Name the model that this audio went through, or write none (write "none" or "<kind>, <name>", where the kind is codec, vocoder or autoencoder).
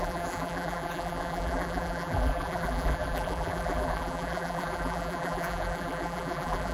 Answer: vocoder, BigVGAN v2